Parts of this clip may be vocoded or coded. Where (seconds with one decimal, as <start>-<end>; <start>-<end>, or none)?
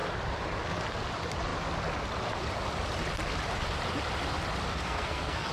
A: 4.7-5.5